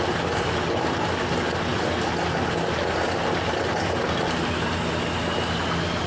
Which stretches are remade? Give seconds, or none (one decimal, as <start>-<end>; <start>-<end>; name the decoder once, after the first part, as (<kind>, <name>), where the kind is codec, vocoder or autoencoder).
none